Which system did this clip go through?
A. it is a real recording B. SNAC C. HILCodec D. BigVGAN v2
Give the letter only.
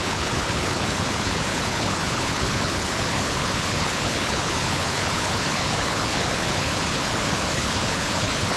C